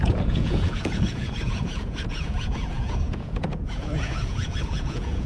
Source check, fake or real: fake